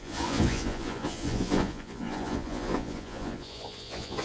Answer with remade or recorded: remade